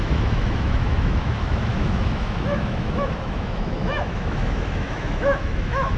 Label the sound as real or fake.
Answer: fake